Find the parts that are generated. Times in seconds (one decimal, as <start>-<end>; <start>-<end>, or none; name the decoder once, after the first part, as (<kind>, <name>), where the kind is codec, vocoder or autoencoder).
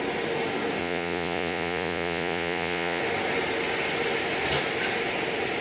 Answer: 0.8-3.0 (vocoder, Vocos)